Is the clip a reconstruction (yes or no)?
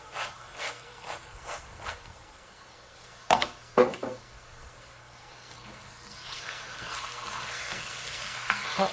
yes